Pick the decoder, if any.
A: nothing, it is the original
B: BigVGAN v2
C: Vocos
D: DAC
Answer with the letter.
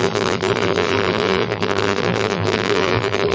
B